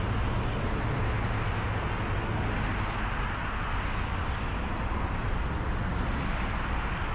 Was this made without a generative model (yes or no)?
yes